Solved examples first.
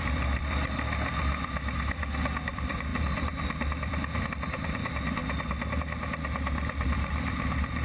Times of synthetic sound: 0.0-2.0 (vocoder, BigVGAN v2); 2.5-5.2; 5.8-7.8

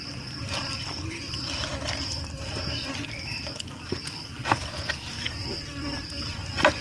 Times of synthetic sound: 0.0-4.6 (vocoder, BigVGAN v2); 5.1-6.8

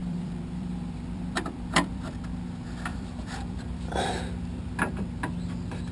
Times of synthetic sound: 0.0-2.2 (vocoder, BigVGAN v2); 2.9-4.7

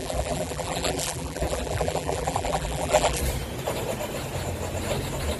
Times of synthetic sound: 0.0-3.2 (vocoder, BigVGAN v2)